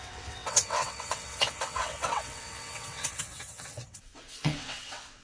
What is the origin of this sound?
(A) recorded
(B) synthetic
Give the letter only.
B